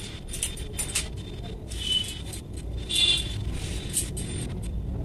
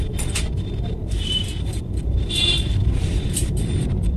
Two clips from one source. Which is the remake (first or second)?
second